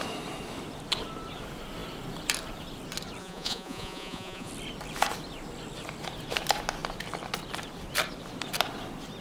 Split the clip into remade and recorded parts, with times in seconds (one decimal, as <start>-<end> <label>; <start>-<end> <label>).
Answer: 0.0-3.2 recorded; 3.2-4.5 remade; 4.5-9.2 recorded